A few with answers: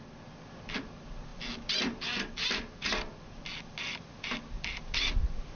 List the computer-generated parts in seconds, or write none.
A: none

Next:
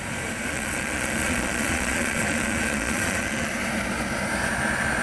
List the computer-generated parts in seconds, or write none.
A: 0.5-3.5 (vocoder, Vocos)

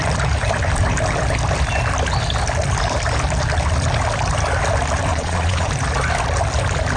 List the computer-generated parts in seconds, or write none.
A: 5.1-5.7 (vocoder, Vocos)

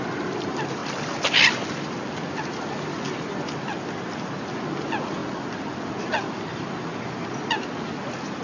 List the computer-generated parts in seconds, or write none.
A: none

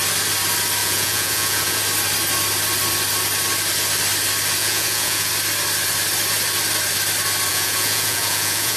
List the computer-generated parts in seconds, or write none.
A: 0.8-1.8 (vocoder, Vocos); 4.6-5.3; 7.5-8.8